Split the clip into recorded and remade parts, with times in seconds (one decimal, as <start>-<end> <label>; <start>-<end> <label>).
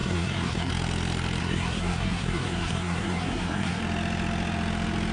0.0-0.7 remade; 0.7-1.4 recorded; 1.4-3.8 remade; 3.8-5.1 recorded